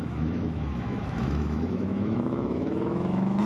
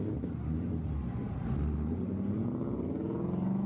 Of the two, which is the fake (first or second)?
first